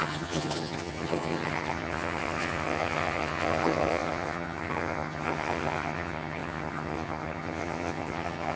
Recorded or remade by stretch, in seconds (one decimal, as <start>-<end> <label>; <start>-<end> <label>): 0.0-8.6 remade

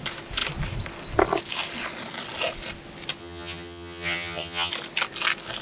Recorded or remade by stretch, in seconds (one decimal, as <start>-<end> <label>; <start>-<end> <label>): 0.0-3.2 recorded; 3.2-4.7 remade; 4.7-5.6 recorded